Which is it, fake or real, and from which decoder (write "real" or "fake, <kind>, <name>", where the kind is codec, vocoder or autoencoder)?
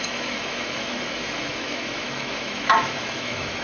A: fake, autoencoder, DAC-VAE